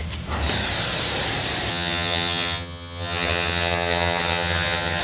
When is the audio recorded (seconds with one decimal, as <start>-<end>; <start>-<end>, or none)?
0.0-1.7